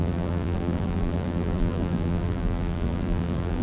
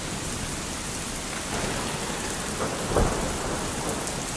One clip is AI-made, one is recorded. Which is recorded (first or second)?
second